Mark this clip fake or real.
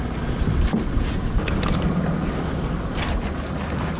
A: real